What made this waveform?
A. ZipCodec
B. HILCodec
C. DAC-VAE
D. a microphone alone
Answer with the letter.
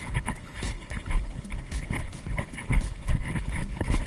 B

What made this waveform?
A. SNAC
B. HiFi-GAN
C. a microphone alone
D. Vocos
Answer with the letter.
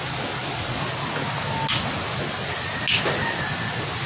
C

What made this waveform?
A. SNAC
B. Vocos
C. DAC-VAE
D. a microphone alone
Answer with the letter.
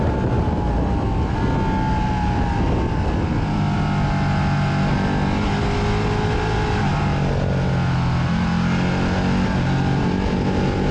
D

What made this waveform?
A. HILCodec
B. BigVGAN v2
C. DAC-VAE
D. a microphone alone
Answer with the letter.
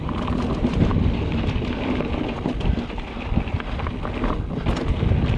D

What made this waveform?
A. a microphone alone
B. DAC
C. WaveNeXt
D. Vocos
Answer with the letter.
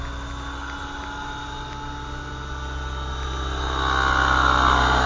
A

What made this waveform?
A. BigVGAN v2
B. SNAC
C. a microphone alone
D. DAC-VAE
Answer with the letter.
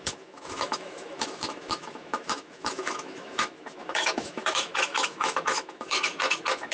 D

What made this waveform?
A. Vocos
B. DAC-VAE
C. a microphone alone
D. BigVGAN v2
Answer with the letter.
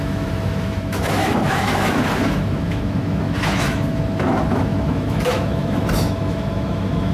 B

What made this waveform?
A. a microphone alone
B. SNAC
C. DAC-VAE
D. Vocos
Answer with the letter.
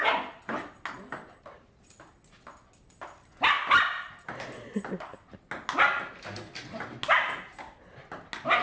A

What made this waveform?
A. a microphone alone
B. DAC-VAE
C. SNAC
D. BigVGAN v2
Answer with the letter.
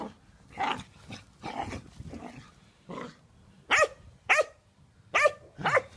A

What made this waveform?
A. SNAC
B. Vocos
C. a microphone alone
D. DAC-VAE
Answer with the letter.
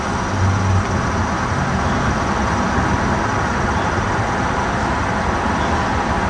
C